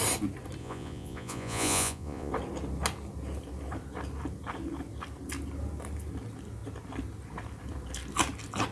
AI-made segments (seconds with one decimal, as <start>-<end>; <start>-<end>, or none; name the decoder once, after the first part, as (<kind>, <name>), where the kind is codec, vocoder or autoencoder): 0.6-2.3 (vocoder, Vocos)